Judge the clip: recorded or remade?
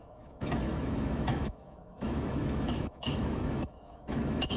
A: remade